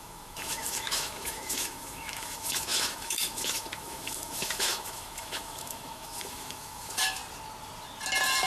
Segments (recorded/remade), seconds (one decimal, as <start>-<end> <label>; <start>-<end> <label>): 0.0-7.2 remade; 7.2-8.5 recorded